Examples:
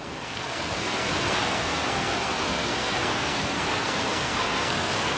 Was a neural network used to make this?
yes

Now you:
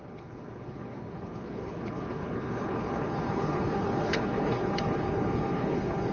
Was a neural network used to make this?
yes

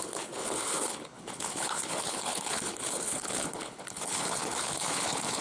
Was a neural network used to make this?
yes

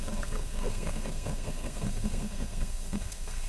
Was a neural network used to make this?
yes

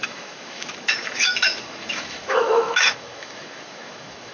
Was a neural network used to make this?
yes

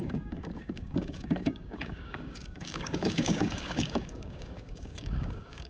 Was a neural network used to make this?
yes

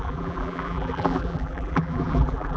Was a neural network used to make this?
yes